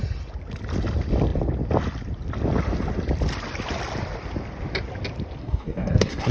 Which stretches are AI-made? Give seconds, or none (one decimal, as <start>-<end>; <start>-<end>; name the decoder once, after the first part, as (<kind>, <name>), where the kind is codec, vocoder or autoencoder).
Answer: 5.4-6.3 (codec, SNAC)

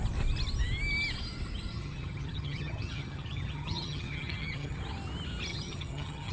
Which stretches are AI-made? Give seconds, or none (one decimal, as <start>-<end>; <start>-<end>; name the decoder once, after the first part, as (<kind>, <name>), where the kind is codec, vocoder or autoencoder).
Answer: 1.7-4.8 (vocoder, HiFi-GAN); 5.5-6.3

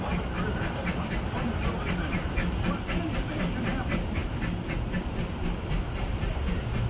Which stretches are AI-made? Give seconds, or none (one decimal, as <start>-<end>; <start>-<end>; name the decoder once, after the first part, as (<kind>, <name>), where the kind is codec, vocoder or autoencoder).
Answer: none

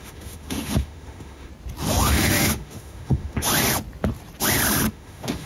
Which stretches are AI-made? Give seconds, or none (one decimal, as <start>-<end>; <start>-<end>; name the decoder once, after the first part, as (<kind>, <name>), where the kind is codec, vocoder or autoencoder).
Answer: 0.0-1.5 (autoencoder, DAC-VAE); 2.1-3.5; 4.9-5.5

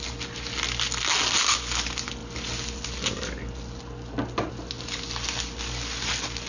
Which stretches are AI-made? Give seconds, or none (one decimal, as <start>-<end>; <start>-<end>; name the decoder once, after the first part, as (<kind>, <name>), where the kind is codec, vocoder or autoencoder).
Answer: none

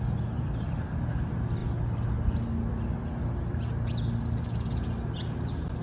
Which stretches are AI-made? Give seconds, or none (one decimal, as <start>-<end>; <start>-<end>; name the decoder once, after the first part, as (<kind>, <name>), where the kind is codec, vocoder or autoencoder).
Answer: none

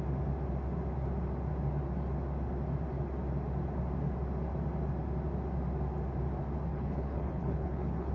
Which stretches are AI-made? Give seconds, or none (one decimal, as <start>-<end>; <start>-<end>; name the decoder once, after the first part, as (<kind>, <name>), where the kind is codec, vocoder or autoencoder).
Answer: 6.7-8.1 (codec, HILCodec)

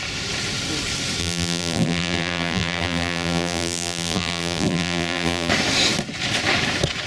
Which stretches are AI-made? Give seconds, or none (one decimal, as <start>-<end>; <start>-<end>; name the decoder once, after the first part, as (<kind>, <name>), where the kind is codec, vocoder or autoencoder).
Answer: 1.2-5.5 (vocoder, BigVGAN v2)